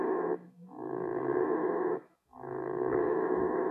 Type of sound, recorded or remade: remade